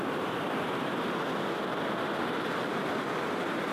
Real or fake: real